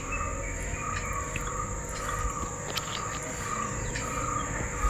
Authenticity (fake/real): real